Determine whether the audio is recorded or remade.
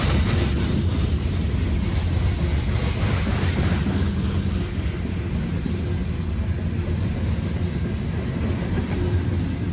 recorded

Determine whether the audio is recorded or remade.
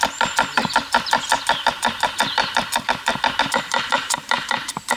remade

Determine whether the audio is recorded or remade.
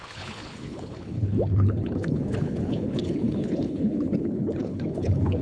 remade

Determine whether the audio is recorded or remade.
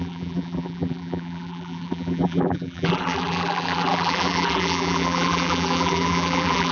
remade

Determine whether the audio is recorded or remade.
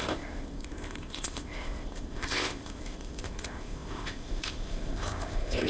remade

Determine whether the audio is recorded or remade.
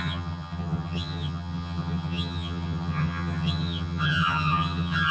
remade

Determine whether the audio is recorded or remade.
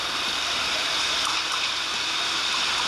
recorded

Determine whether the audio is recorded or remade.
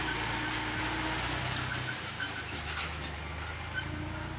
recorded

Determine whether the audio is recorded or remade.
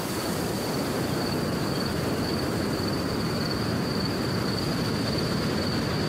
recorded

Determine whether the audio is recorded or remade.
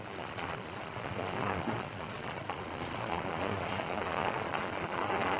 remade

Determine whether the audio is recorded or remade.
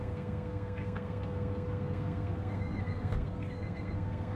remade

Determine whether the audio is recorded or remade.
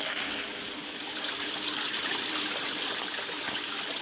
recorded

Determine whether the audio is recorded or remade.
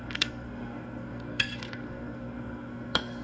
remade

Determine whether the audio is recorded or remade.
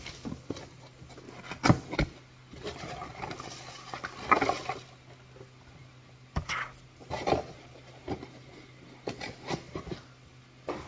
recorded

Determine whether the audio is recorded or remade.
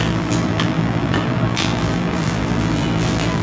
remade